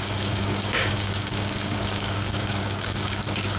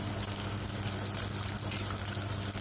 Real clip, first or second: second